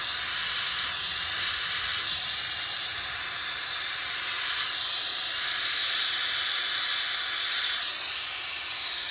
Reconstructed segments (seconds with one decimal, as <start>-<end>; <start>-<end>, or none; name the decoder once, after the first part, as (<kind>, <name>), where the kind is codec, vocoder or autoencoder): 1.9-6.7 (vocoder, BigVGAN v2)